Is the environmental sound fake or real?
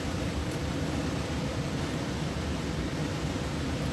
fake